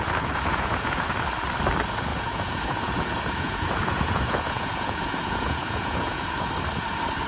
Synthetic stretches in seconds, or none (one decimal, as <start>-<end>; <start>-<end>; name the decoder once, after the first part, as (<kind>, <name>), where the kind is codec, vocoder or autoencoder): 0.0-1.1 (vocoder, Vocos); 2.1-6.5